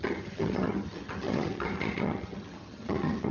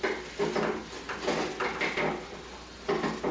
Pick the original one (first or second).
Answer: second